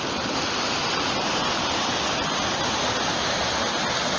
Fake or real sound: real